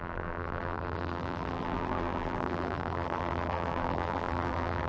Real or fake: fake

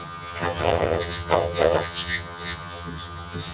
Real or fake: fake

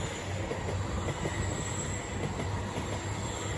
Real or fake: real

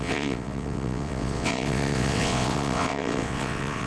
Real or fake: fake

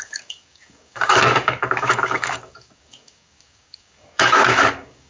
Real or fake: fake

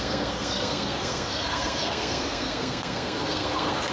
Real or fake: fake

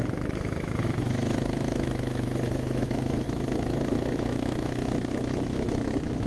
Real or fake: fake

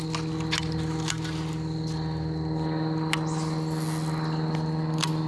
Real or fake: real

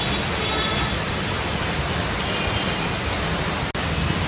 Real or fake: real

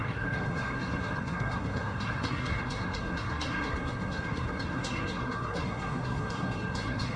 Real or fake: fake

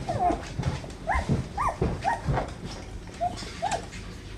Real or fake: real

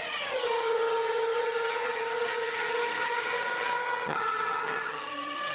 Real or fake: fake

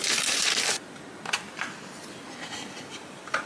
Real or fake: real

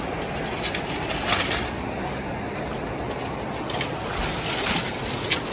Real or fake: real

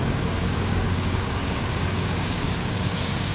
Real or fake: fake